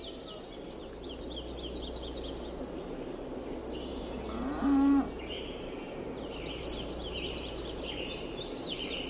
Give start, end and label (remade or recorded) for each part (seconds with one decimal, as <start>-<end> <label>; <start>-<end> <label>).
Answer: 0.0-3.9 recorded; 3.9-8.7 remade; 8.7-9.1 recorded